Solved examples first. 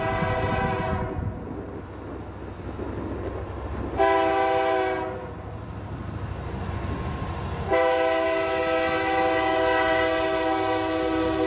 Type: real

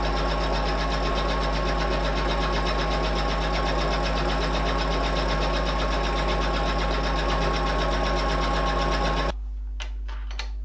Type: real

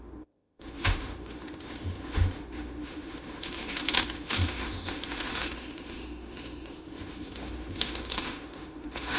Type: fake